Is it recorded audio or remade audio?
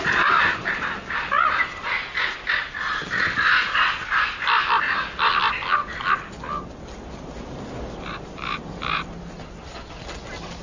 recorded